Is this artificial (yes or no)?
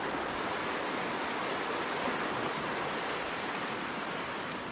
no